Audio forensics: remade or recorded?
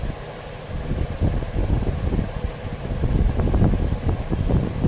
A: recorded